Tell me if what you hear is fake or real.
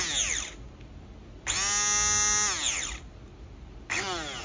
real